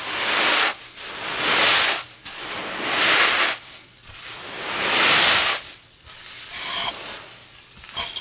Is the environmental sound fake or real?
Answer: real